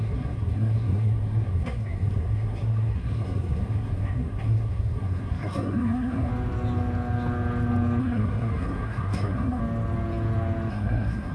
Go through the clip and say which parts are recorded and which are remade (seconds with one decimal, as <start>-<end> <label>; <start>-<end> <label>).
0.0-6.3 remade; 6.3-8.0 recorded; 8.0-9.6 remade; 9.6-10.7 recorded; 10.7-11.3 remade